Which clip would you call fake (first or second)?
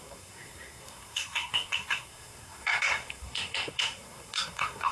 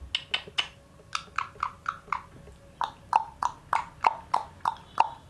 first